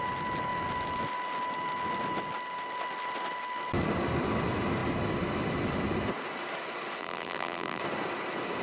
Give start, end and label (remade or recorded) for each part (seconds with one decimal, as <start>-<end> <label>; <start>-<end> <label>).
0.0-7.0 recorded; 7.0-7.8 remade; 7.8-8.6 recorded